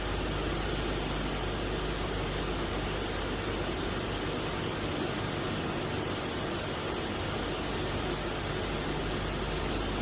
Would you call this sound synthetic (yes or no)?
no